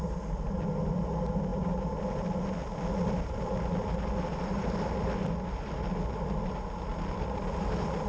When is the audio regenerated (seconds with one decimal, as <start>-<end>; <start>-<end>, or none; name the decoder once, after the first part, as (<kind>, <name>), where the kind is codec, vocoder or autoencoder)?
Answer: none